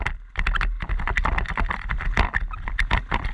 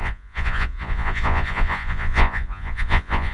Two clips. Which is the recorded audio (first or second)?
first